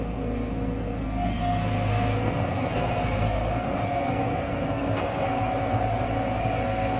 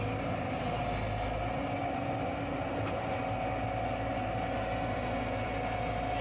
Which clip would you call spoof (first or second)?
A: first